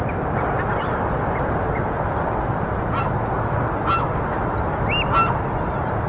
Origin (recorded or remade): recorded